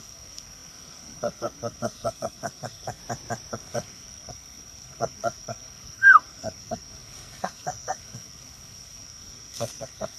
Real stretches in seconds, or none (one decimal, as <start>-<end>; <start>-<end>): 3.0-3.5